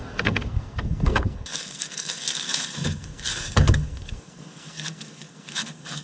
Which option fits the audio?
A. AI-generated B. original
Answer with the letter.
A